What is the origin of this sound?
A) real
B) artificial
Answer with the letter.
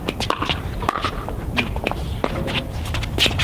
A